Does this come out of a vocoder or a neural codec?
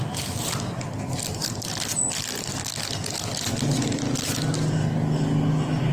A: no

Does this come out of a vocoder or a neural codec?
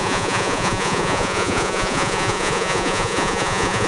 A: yes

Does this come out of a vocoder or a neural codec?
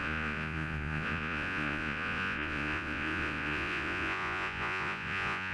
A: yes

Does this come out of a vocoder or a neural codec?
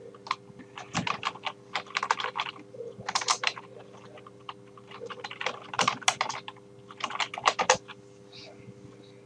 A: no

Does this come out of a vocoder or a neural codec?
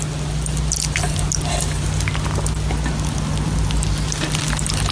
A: no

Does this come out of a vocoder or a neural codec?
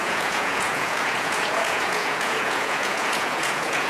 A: yes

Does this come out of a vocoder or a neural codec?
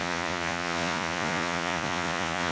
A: yes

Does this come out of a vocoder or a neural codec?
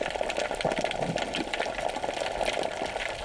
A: no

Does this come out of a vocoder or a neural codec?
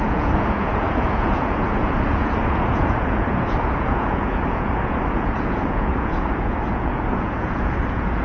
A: yes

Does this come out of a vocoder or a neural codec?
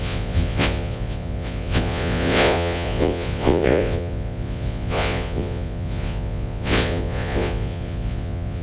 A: yes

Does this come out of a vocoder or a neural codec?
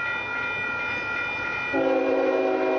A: no